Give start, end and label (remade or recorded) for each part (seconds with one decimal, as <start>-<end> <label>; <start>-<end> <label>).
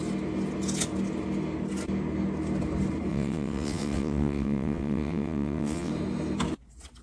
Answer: 0.0-3.1 recorded; 3.1-5.9 remade; 5.9-7.0 recorded